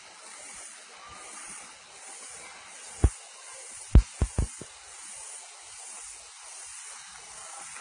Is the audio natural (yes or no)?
yes